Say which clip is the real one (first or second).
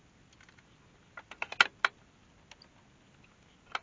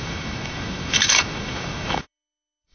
first